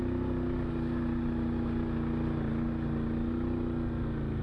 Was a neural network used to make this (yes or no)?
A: no